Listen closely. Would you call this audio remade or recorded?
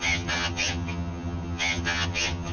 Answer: remade